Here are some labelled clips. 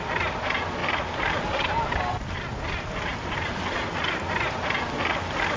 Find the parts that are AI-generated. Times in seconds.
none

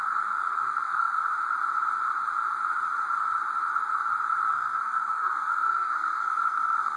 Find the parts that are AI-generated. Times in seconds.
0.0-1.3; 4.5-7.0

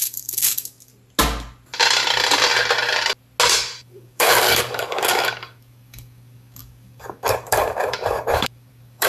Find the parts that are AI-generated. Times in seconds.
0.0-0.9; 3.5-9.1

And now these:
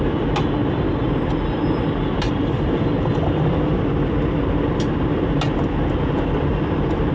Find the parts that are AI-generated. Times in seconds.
none

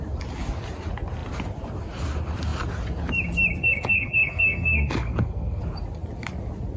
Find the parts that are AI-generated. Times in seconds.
3.6-5.6